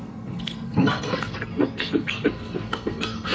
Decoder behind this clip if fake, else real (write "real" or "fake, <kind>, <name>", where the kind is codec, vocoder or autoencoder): fake, codec, SNAC